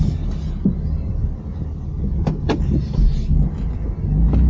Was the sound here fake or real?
real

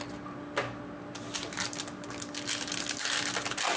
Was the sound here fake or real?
real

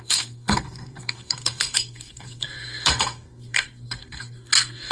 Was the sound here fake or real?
fake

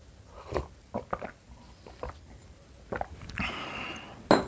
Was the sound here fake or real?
real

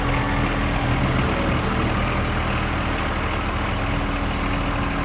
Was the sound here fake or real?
real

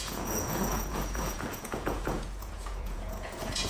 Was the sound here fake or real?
fake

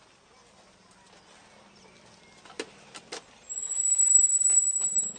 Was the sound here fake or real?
real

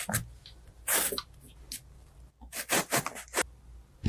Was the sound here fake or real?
real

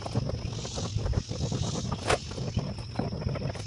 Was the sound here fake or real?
real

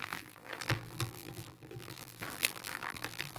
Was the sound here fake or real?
fake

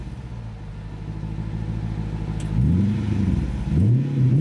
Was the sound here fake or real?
real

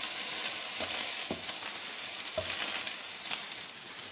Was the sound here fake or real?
real